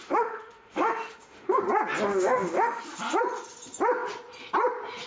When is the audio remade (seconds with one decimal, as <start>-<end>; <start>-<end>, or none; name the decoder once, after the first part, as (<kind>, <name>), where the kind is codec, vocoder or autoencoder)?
0.0-1.6 (autoencoder, DAC-VAE); 2.1-2.8